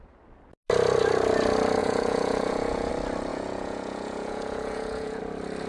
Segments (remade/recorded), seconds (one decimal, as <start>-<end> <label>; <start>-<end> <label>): 0.0-1.8 recorded; 1.8-2.9 remade; 2.9-3.3 recorded; 3.3-5.2 remade; 5.2-5.7 recorded